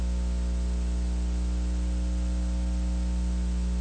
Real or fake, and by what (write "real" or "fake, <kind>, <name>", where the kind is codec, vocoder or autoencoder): real